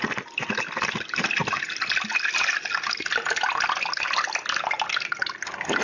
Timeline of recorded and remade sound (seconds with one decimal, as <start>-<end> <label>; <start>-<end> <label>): 0.0-5.8 recorded